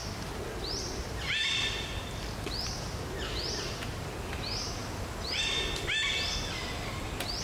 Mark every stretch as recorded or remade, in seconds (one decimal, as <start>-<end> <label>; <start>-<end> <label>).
0.0-7.4 recorded